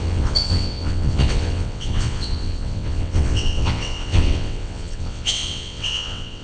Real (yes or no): no